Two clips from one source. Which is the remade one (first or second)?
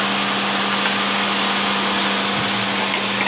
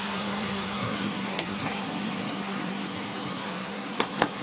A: second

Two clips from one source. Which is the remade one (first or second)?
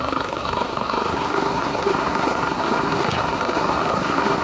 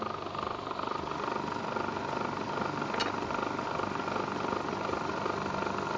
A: first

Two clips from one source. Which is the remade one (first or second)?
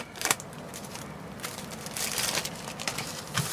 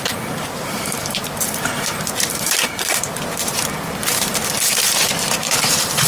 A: second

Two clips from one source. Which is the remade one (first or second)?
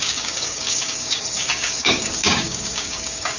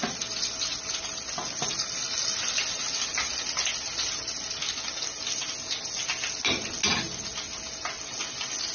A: first